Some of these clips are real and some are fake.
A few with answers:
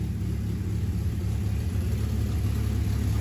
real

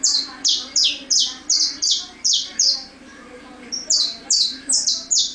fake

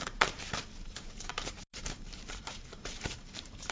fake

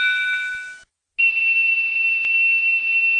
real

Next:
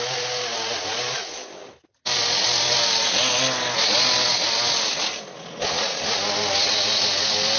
real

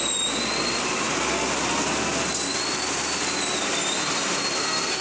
real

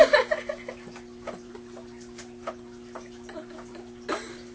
real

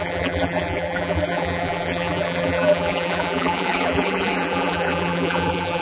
fake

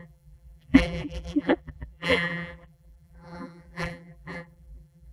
fake